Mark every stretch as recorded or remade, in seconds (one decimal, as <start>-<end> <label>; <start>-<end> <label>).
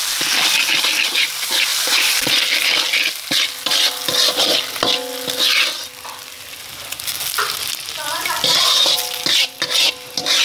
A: 0.0-1.7 recorded; 1.7-2.3 remade; 2.3-10.4 recorded